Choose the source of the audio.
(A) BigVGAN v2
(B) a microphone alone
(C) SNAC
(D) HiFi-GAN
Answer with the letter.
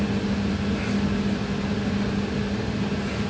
B